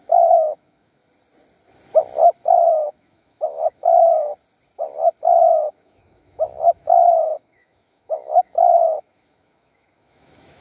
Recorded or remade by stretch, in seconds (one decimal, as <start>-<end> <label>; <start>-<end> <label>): 0.0-1.0 remade; 1.0-2.7 recorded; 2.7-4.3 remade; 4.3-5.2 recorded; 5.2-10.6 remade